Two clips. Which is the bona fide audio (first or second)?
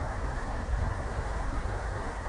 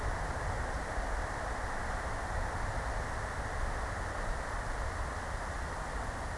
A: second